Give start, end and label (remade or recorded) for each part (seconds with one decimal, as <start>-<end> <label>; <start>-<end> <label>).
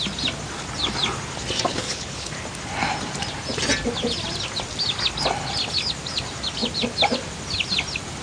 0.0-1.7 recorded; 1.7-2.3 remade; 2.3-8.2 recorded